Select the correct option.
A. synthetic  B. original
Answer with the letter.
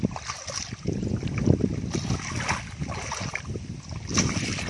B